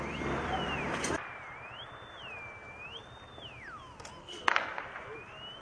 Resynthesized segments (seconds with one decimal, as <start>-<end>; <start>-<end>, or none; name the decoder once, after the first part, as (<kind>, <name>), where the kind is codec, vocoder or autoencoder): 4.2-4.8 (codec, SNAC)